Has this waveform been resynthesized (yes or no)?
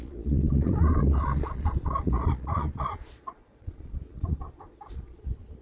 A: yes